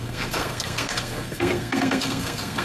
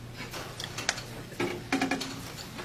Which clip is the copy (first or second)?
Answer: first